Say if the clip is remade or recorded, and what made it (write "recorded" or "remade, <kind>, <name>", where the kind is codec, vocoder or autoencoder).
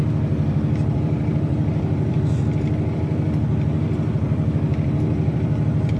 remade, vocoder, BigVGAN v2